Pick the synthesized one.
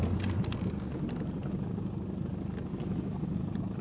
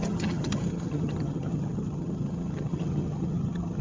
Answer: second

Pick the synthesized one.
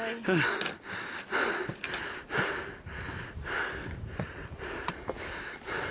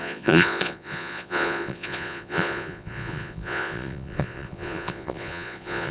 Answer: second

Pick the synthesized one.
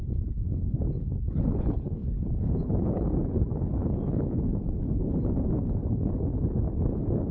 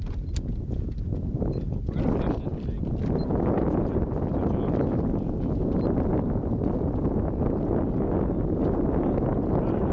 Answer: first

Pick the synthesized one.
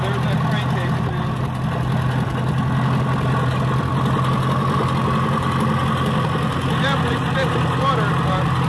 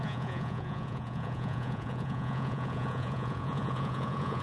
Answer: second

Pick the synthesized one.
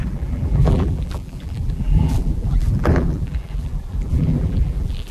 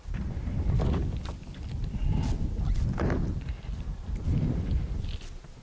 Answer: first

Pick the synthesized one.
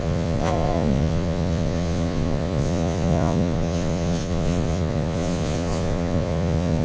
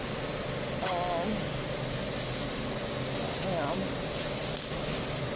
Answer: first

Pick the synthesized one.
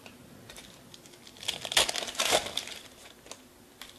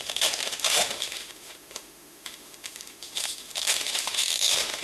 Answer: second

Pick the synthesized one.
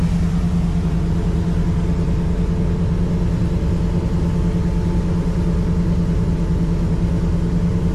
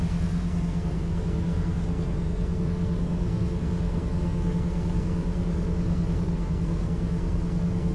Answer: second